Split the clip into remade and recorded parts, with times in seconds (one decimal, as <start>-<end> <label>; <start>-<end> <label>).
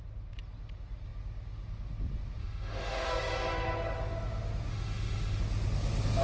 0.0-2.4 recorded; 2.4-3.1 remade; 3.1-4.7 recorded; 4.7-5.4 remade; 5.4-6.2 recorded